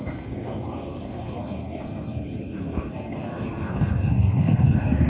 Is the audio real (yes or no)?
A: no